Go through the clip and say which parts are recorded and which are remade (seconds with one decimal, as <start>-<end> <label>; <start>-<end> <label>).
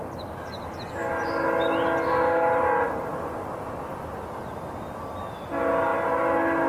0.0-6.7 recorded